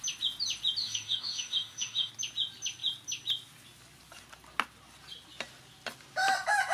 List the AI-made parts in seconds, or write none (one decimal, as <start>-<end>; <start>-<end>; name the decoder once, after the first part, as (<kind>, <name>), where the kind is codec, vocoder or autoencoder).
0.8-2.1 (autoencoder, DAC-VAE)